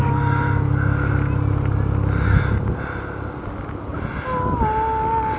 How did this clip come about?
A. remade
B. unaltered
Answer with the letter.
B